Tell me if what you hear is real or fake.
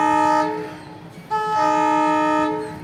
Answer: real